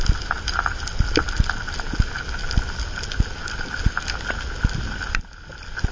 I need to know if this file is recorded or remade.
recorded